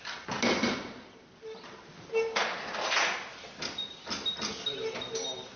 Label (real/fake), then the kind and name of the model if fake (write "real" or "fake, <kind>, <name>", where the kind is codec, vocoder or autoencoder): real